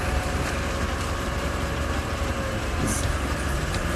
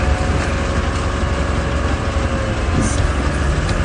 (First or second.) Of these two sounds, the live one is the second